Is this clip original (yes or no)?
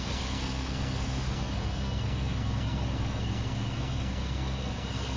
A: no